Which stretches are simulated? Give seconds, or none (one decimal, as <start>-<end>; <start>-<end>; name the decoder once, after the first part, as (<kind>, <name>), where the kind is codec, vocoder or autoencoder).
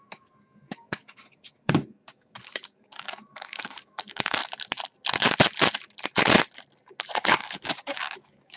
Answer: 0.0-4.4 (codec, DAC); 7.4-8.6